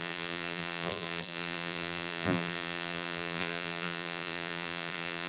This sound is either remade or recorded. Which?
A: remade